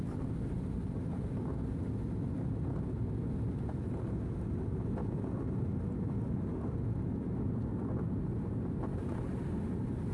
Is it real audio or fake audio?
real